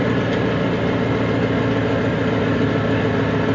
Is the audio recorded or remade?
recorded